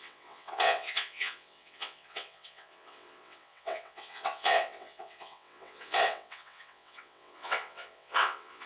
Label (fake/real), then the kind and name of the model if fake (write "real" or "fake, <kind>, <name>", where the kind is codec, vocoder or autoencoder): fake, vocoder, WaveNeXt